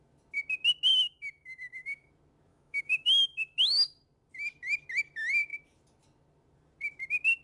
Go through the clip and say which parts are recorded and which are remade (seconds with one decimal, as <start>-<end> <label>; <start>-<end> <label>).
0.0-0.9 recorded; 0.9-2.1 remade; 2.1-2.5 recorded; 2.5-4.0 remade; 4.0-7.4 recorded